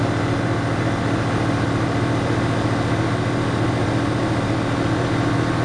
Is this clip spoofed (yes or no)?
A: no